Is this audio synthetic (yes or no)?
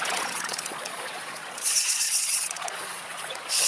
yes